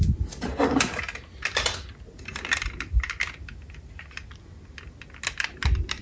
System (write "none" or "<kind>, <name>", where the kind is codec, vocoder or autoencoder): none